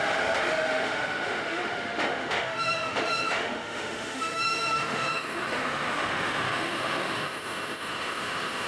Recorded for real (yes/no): no